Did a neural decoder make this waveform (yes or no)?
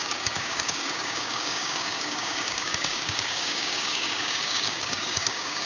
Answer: yes